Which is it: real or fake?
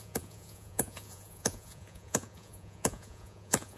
fake